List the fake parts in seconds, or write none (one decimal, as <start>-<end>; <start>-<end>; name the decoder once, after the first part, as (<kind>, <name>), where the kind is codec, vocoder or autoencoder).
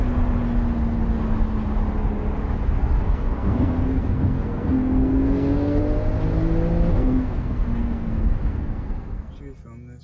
2.8-5.8 (codec, SNAC); 6.9-9.3